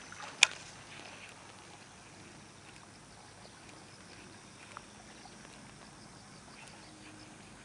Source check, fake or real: real